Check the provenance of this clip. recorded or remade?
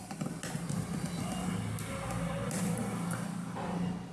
recorded